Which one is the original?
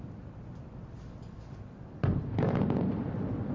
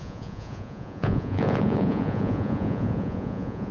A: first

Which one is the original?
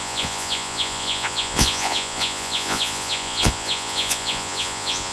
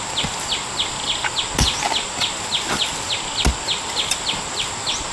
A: second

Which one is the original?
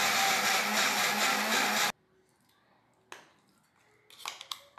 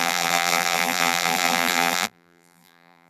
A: first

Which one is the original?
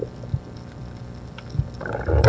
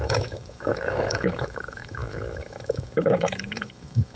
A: first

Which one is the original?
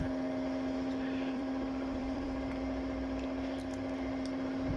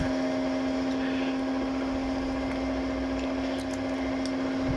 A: second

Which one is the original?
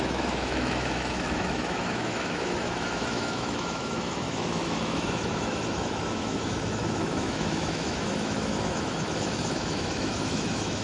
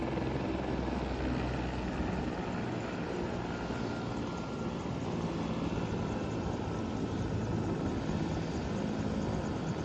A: second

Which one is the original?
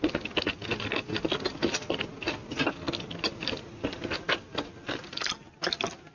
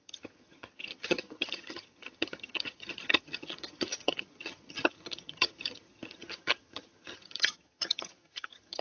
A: first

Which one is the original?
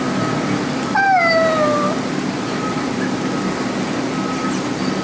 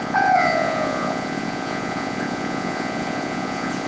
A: first